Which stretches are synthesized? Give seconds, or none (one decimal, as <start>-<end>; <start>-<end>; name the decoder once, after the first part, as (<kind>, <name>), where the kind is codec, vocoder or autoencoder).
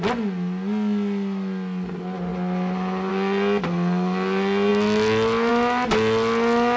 none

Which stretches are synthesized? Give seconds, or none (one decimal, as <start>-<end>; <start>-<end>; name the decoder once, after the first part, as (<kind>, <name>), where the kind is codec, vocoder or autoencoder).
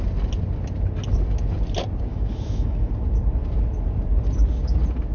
2.1-2.9 (autoencoder, DAC-VAE)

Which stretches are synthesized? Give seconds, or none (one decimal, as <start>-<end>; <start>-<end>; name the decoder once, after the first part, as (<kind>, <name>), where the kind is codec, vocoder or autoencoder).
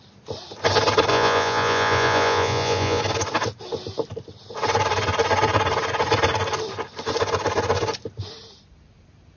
1.1-3.0 (vocoder, Vocos)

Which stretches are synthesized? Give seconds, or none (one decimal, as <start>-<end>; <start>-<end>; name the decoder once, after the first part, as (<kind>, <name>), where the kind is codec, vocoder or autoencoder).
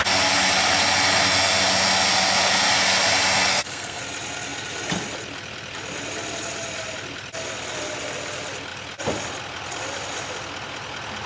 3.5-4.0 (codec, SNAC)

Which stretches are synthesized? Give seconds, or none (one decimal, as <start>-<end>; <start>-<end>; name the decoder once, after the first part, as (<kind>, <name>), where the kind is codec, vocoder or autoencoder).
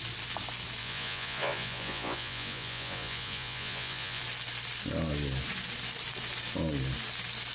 0.8-4.2 (vocoder, Vocos)